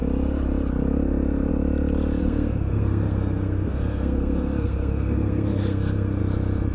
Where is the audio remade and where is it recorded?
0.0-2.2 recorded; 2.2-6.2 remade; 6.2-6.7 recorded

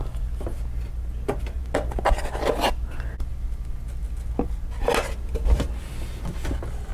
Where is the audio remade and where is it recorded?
0.0-6.9 recorded

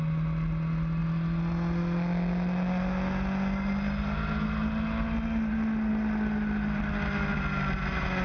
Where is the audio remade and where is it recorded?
0.0-8.2 recorded

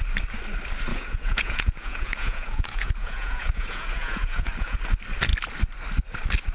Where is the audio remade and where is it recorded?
0.0-0.9 recorded; 0.9-4.8 remade; 4.8-6.5 recorded

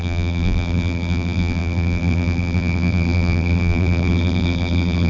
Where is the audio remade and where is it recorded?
0.0-5.1 remade

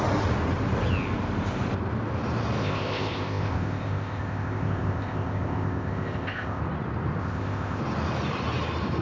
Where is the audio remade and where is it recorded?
0.0-2.6 recorded; 2.6-6.6 remade; 6.6-7.2 recorded; 7.2-7.8 remade; 7.8-9.0 recorded

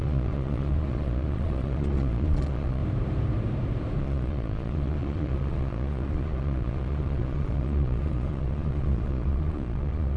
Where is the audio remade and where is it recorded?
0.0-2.8 remade; 2.8-4.0 recorded; 4.0-10.2 remade

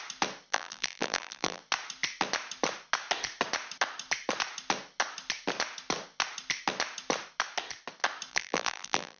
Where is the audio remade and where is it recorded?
0.0-0.5 recorded; 0.5-1.6 remade; 1.6-8.3 recorded; 8.3-9.2 remade